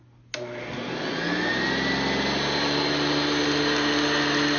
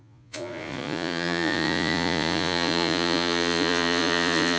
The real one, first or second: first